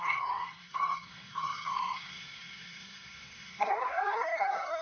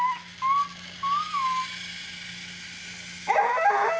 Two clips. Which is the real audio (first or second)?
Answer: second